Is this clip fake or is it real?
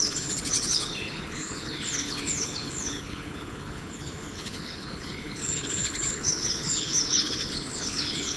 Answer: fake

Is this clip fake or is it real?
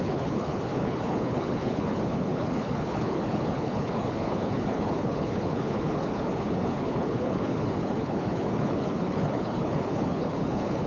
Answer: fake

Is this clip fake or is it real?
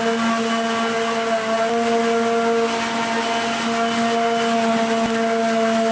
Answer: real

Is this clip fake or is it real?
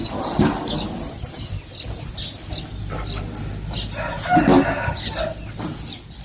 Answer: real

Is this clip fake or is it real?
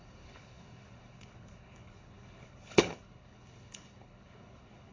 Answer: fake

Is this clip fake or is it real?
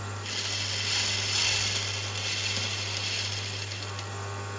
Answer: real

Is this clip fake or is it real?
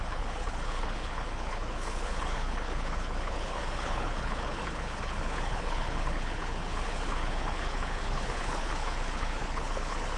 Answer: fake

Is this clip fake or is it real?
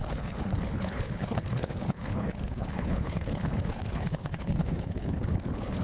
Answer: fake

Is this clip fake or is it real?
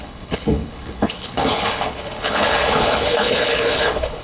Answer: fake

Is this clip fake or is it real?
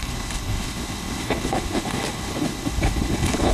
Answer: fake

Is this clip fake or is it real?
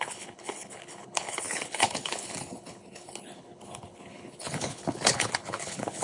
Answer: fake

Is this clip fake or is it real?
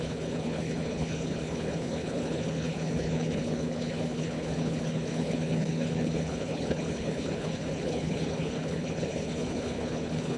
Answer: fake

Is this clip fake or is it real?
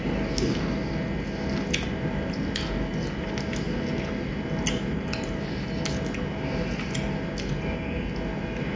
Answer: real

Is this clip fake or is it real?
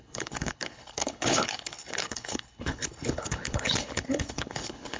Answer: fake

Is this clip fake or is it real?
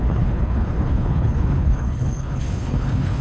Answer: fake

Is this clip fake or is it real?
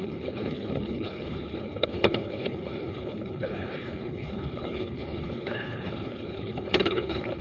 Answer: fake